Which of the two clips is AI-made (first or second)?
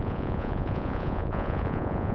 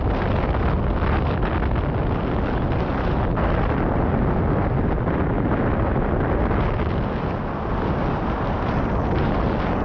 first